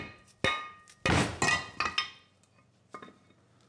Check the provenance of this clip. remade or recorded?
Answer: recorded